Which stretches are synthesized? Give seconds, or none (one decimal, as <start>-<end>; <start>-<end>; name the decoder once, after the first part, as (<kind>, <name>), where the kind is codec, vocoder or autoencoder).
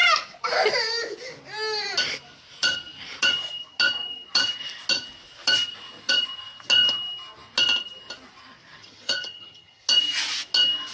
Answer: 8.8-9.8 (vocoder, HiFi-GAN)